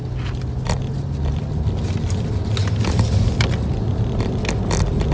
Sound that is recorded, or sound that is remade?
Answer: recorded